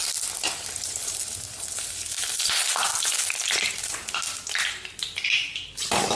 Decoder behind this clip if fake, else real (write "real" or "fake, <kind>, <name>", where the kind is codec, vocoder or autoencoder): real